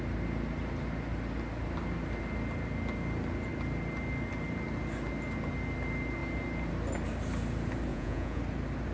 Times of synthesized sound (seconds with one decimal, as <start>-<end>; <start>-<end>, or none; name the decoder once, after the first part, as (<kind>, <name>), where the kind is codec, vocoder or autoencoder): 7.9-8.4 (vocoder, Vocos)